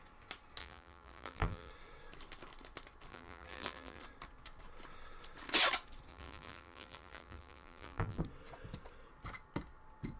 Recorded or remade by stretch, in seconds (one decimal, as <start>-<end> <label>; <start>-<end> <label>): 0.0-0.6 recorded; 0.6-1.7 remade; 1.7-3.1 recorded; 3.1-4.0 remade; 4.0-6.1 recorded; 6.1-8.2 remade; 8.2-10.2 recorded